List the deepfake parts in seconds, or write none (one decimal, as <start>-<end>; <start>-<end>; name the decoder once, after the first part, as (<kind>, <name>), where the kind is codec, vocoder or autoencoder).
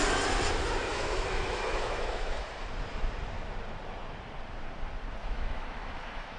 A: 0.9-2.7 (autoencoder, DAC-VAE); 5.2-6.4